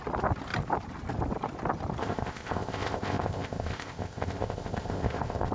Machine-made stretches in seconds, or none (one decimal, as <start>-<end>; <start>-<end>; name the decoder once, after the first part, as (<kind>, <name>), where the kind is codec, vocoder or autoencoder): 2.0-5.5 (codec, ZipCodec)